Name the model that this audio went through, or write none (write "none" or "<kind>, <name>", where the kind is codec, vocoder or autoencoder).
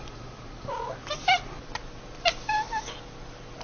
none